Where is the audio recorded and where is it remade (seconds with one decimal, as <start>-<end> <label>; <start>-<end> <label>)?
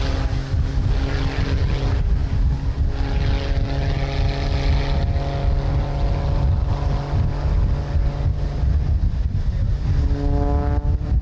0.0-11.2 recorded